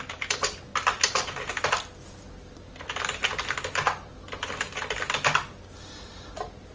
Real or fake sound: real